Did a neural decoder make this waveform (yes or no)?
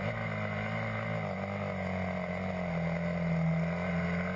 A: no